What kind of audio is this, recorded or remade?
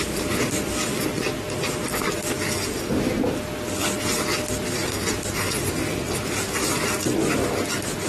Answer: recorded